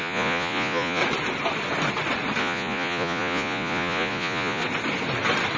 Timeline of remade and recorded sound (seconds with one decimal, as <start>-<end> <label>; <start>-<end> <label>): 0.0-1.0 remade; 1.0-2.4 recorded; 2.4-4.6 remade; 4.6-5.6 recorded